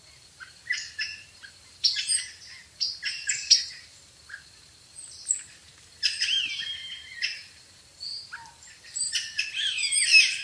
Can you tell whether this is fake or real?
fake